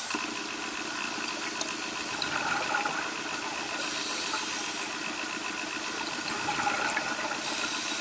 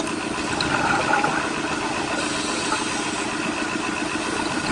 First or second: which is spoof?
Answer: second